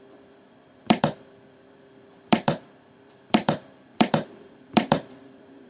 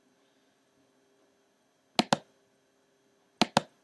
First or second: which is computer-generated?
first